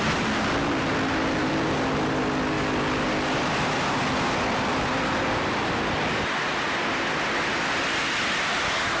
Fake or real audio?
fake